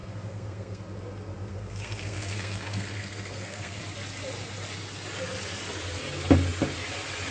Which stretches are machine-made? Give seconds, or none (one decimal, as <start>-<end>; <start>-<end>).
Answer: 0.0-0.8; 1.5-3.8

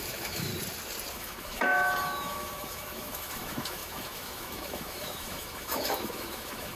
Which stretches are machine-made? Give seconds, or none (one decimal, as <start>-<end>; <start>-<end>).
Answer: 0.0-0.5; 1.1-6.8